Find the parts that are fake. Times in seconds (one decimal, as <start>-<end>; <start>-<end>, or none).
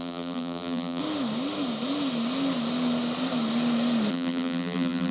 0.0-1.0; 4.1-5.1